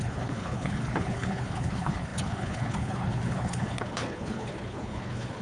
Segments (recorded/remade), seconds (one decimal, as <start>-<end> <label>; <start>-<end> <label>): 0.0-5.4 remade